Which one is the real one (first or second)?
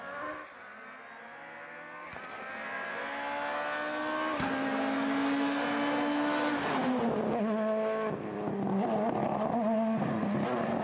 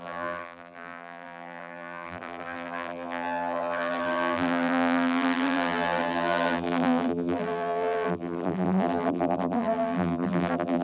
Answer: first